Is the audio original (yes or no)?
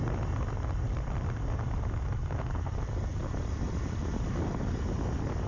yes